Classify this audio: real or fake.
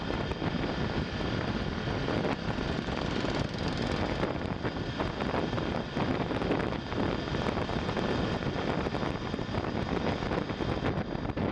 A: real